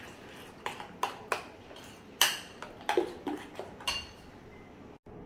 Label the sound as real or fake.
real